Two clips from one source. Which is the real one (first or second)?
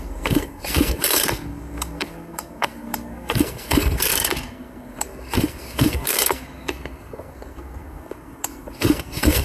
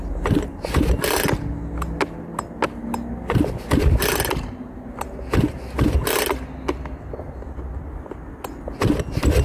second